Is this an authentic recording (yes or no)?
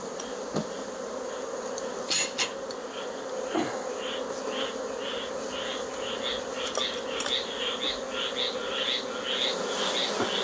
yes